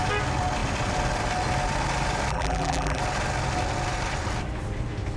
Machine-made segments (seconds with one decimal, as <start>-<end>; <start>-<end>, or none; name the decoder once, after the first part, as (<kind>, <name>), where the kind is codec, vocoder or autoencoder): 2.3-3.0 (vocoder, BigVGAN v2)